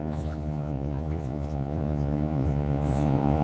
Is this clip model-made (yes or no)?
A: yes